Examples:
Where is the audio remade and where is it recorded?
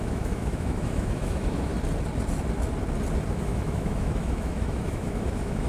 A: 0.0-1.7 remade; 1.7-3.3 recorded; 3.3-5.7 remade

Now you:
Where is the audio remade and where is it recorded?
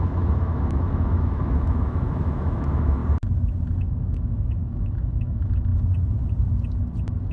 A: 0.0-3.0 remade; 3.0-3.8 recorded; 3.8-5.7 remade; 5.7-7.3 recorded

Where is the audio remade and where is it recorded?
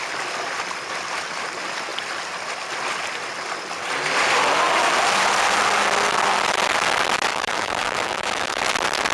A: 0.0-7.3 recorded; 7.3-8.6 remade; 8.6-9.1 recorded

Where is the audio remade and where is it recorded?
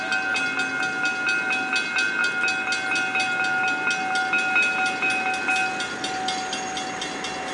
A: 0.0-7.5 recorded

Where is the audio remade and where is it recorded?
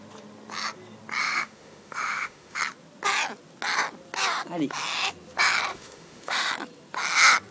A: 0.0-1.2 recorded; 1.2-2.6 remade; 2.6-5.7 recorded; 5.7-6.5 remade; 6.5-7.5 recorded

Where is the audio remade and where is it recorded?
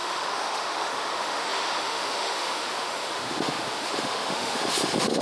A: 0.0-5.2 remade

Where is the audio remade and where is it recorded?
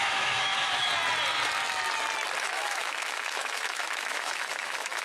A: 0.0-0.9 remade; 0.9-2.4 recorded; 2.4-5.0 remade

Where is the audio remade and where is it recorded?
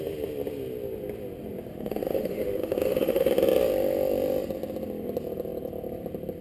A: 0.0-1.7 recorded; 1.7-3.3 remade; 3.3-6.4 recorded